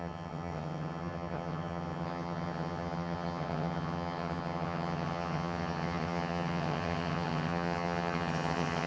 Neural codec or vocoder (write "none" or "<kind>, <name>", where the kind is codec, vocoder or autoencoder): vocoder, HiFi-GAN